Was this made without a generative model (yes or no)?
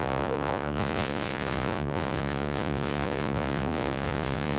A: no